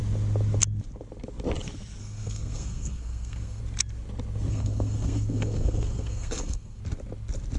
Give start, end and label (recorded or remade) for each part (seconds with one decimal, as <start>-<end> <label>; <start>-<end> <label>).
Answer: 0.0-2.0 recorded; 2.0-3.6 remade; 3.6-4.5 recorded; 4.5-6.8 remade; 6.8-7.6 recorded